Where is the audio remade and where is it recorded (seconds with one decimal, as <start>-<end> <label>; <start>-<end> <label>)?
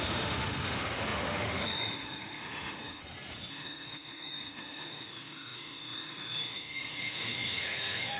0.0-3.0 remade; 3.0-3.5 recorded; 3.5-8.2 remade